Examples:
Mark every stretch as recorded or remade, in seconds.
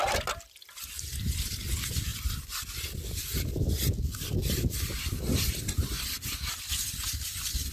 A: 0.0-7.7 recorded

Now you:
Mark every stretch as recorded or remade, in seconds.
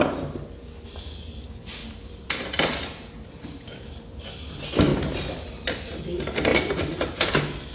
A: 0.0-1.8 recorded; 1.8-3.3 remade; 3.3-4.9 recorded; 4.9-6.0 remade; 6.0-6.5 recorded; 6.5-7.3 remade; 7.3-7.7 recorded